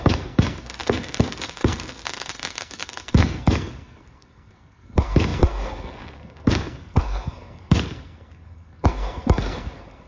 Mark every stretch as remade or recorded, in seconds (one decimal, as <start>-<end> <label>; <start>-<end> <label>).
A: 0.0-10.1 remade